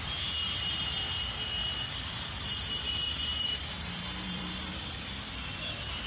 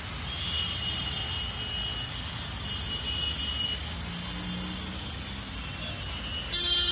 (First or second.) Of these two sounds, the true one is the second